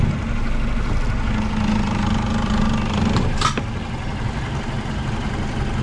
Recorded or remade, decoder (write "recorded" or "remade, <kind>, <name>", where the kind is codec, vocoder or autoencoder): recorded